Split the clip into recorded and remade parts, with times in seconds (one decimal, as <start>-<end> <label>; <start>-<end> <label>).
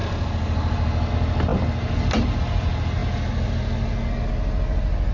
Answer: 0.0-5.1 recorded